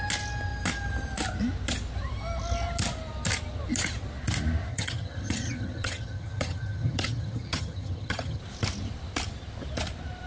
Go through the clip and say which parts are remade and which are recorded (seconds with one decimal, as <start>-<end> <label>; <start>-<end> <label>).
0.0-4.7 recorded; 4.7-8.4 remade; 8.4-10.3 recorded